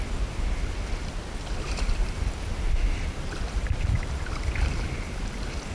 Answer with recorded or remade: recorded